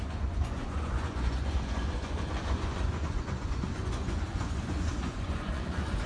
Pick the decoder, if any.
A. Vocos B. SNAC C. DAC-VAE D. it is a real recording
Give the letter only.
A